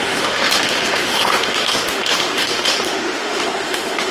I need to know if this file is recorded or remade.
remade